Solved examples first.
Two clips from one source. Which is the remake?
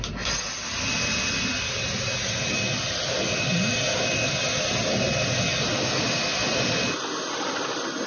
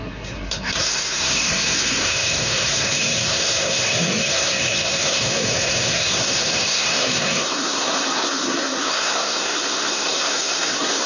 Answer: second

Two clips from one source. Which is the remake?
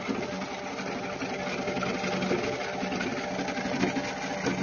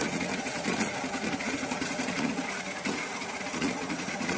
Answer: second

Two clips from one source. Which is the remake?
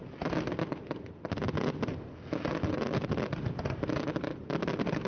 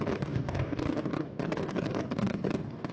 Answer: second